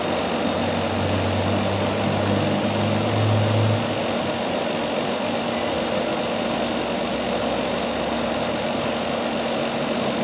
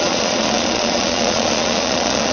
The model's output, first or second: second